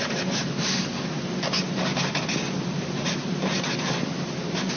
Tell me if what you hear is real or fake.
real